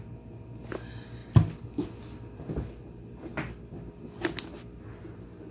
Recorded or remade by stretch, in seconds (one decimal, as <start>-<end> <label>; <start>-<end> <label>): 0.0-5.5 recorded